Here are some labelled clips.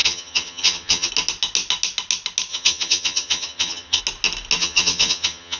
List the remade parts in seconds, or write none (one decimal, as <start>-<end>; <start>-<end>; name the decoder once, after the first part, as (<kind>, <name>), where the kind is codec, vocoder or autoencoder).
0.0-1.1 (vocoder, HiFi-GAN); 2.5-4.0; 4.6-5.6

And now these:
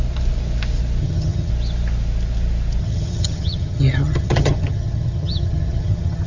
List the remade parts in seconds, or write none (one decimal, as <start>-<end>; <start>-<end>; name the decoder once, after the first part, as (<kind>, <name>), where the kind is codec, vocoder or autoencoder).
1.0-1.5 (vocoder, HiFi-GAN); 2.8-6.3

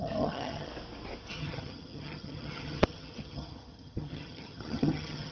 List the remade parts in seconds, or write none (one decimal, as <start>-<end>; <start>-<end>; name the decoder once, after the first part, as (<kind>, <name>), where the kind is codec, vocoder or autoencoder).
0.0-0.7 (vocoder, HiFi-GAN); 1.3-5.3